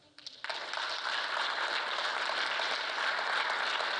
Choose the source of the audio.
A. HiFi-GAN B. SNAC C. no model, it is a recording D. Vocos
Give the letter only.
C